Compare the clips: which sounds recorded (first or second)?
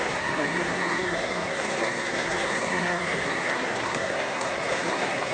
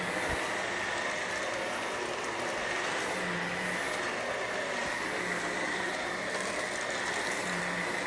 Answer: second